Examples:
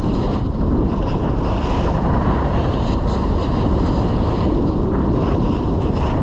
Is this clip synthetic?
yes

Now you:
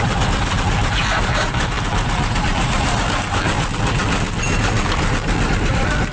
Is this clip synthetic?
yes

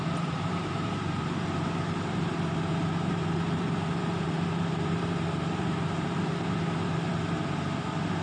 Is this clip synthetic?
yes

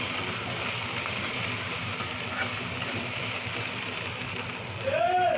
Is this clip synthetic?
yes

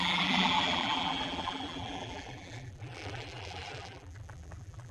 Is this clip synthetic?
yes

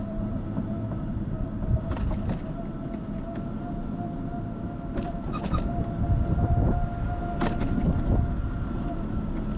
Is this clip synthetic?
no